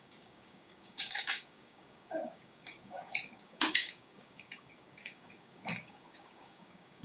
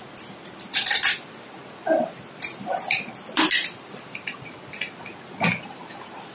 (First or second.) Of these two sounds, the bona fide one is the second